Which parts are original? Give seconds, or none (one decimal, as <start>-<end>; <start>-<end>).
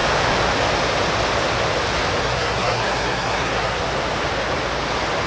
0.0-2.2; 3.8-5.3